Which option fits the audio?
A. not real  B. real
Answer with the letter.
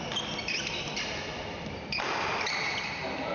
B